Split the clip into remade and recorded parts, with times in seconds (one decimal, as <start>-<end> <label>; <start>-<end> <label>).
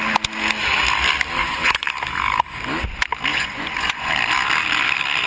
0.0-1.4 recorded; 1.4-1.9 remade; 1.9-3.3 recorded; 3.3-4.1 remade; 4.1-5.3 recorded